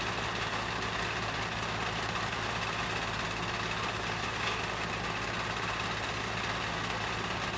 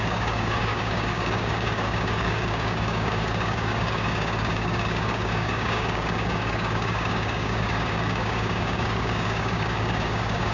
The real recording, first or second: first